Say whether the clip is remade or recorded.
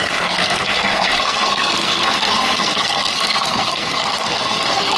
remade